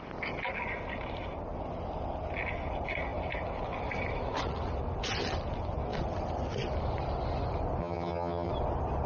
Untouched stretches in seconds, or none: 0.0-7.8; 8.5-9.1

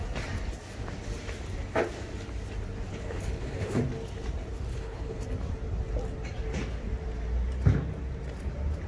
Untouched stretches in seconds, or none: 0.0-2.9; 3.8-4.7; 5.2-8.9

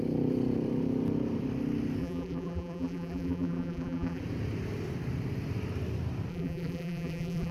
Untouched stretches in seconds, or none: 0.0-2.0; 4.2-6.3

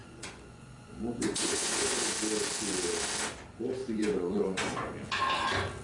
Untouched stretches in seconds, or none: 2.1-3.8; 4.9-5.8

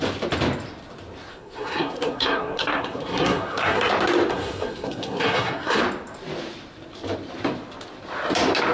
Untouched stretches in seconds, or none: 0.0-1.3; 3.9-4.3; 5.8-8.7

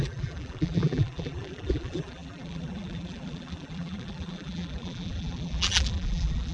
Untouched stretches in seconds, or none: none